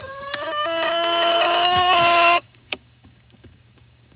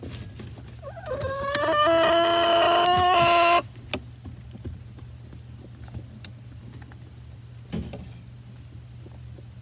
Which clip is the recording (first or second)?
second